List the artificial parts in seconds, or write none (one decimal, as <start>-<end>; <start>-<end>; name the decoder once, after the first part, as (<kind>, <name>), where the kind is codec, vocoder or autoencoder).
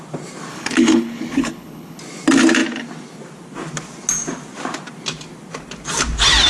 0.5-2.0 (codec, HILCodec)